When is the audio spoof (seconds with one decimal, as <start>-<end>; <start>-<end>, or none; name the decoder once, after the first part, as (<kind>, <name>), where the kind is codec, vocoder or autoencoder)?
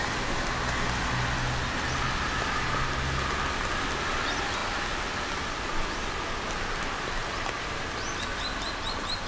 none